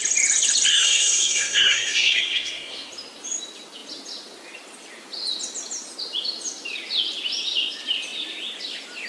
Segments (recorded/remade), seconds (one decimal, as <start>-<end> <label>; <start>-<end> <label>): 0.0-0.7 recorded; 0.7-2.9 remade; 2.9-9.1 recorded

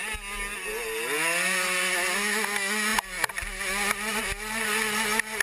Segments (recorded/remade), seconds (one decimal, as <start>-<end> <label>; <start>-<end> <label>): 0.0-5.4 recorded

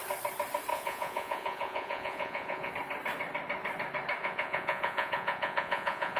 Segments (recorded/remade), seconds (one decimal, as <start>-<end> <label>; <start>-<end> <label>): 0.0-0.7 recorded; 0.7-2.7 remade; 2.7-4.2 recorded; 4.2-6.2 remade

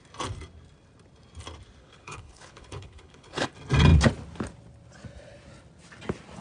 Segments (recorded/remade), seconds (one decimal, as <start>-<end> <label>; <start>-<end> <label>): 0.0-1.8 recorded; 1.8-3.5 remade; 3.5-6.4 recorded

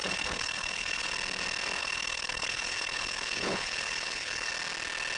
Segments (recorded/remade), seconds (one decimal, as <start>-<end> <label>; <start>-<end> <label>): 0.0-1.1 remade; 1.1-1.8 recorded; 1.8-4.5 remade; 4.5-5.2 recorded

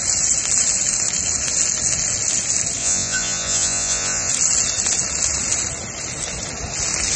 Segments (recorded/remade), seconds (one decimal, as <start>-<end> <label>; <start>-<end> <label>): 0.0-2.8 recorded; 2.8-4.3 remade; 4.3-7.2 recorded

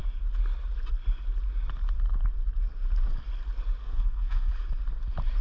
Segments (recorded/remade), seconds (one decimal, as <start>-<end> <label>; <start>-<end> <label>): 0.0-3.8 recorded; 3.8-4.5 remade; 4.5-5.4 recorded

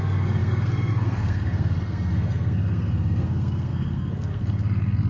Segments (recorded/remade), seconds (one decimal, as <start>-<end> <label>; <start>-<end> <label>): 0.0-5.1 remade